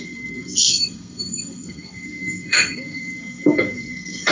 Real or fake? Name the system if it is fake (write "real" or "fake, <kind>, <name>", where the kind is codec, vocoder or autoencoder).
fake, codec, SNAC